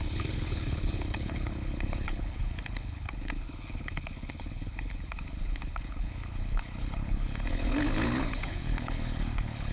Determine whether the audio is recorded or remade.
remade